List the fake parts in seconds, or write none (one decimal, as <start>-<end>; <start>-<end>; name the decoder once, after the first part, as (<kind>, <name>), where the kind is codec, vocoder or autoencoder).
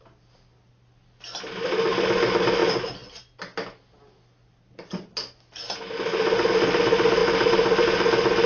none